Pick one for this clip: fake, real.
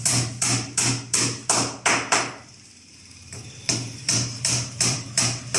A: fake